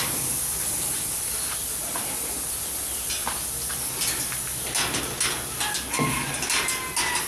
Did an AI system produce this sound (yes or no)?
no